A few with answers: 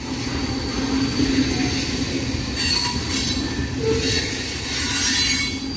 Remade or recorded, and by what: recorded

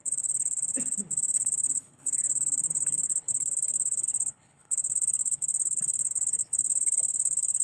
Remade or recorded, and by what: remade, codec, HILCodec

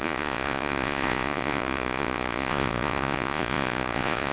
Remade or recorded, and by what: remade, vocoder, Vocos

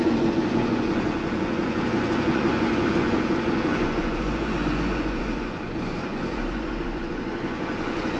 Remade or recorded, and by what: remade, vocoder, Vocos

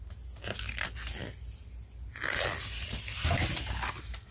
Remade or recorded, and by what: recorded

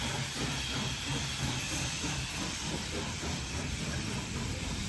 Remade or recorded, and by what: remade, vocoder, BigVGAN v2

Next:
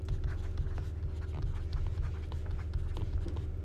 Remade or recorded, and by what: recorded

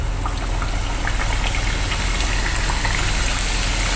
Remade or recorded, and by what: recorded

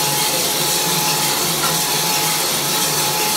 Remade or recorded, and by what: remade, vocoder, BigVGAN v2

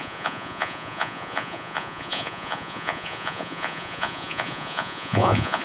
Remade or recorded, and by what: remade, vocoder, Vocos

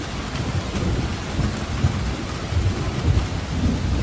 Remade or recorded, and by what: recorded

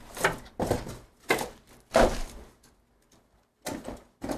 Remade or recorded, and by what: recorded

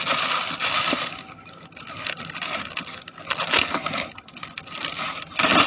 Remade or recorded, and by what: recorded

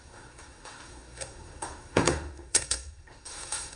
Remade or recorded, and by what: remade, codec, SNAC